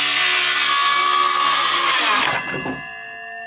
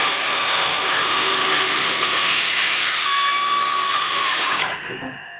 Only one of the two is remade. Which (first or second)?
second